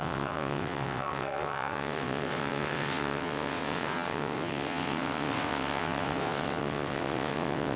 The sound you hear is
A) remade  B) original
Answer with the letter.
A